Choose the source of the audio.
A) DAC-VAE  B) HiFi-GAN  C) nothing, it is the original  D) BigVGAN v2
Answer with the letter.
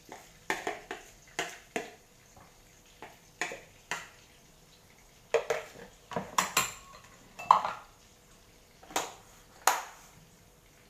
C